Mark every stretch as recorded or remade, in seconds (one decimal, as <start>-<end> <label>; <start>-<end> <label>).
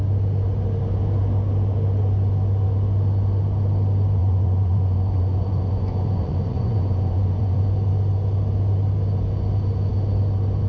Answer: 0.0-4.2 recorded; 4.2-7.6 remade; 7.6-10.7 recorded